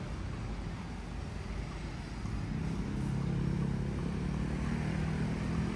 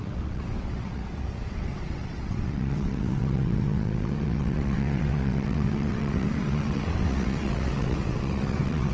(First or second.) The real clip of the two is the first